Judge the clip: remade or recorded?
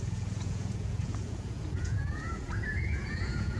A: remade